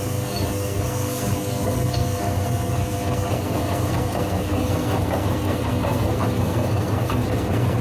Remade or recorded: remade